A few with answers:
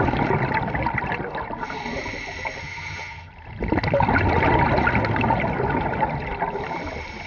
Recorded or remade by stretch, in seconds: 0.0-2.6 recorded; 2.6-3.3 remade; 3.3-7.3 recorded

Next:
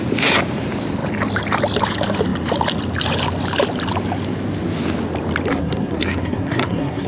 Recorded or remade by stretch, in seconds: 0.0-5.5 recorded; 5.5-7.1 remade